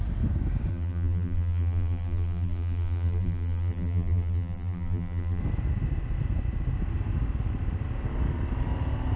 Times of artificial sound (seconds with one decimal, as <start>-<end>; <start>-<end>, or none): 0.7-5.4